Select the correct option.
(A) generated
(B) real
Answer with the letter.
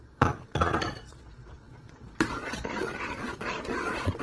A